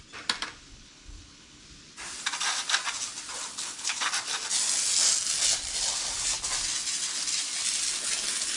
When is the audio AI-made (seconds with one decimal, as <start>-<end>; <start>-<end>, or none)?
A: 0.7-1.6; 3.5-4.1

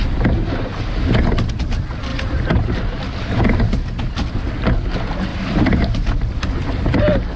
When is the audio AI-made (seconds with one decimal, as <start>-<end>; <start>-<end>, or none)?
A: 2.1-4.4; 5.3-7.0

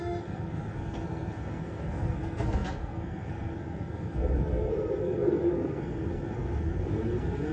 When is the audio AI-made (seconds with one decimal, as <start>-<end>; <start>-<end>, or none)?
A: 0.0-7.5

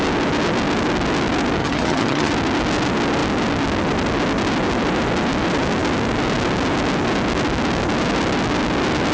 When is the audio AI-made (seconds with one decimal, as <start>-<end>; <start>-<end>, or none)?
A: 1.6-2.3

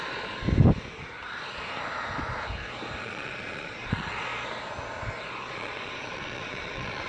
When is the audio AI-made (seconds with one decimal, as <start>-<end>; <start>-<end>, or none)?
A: 0.0-0.4; 3.0-4.3; 5.3-7.1

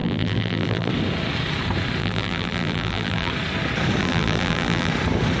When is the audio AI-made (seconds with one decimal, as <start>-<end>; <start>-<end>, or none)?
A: 0.0-0.9; 2.0-3.3; 4.0-4.9